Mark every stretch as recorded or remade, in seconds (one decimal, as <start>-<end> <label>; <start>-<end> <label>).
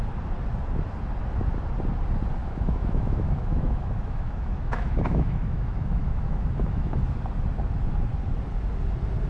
0.0-2.4 recorded; 2.4-7.0 remade; 7.0-9.3 recorded